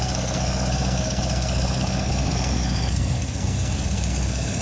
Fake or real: fake